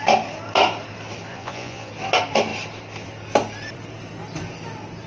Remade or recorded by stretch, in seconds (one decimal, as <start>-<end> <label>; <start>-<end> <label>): 0.0-1.3 recorded; 1.3-1.9 remade; 1.9-5.1 recorded